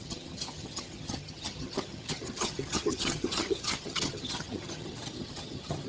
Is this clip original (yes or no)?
no